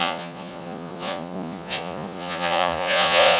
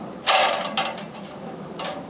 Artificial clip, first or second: first